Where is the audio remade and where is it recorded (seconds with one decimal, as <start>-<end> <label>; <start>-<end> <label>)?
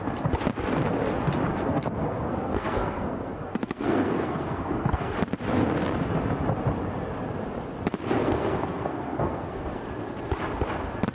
0.0-1.5 recorded; 1.5-5.1 remade; 5.1-8.2 recorded; 8.2-9.9 remade; 9.9-11.1 recorded